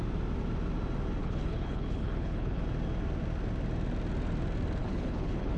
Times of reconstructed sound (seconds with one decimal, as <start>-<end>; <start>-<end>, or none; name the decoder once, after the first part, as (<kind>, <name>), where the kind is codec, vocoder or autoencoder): 1.2-2.6 (codec, HILCodec); 4.8-5.6